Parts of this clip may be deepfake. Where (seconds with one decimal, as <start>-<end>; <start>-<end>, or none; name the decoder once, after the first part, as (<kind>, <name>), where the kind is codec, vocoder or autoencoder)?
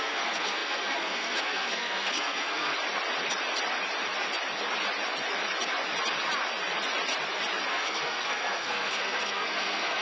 0.0-2.7 (codec, SNAC); 7.7-10.0